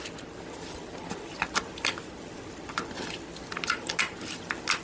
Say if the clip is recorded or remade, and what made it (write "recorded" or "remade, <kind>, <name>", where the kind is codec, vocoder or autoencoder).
recorded